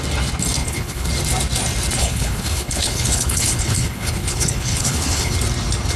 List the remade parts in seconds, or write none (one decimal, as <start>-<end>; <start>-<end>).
0.6-1.1; 2.0-5.3